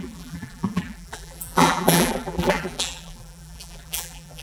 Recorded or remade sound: remade